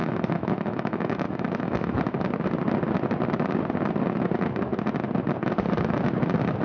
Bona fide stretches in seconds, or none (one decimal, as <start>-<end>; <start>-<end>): 2.0-6.6